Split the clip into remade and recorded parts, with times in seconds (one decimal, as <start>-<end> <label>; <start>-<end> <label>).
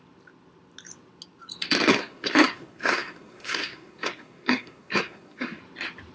0.0-1.9 recorded; 1.9-5.6 remade; 5.6-6.1 recorded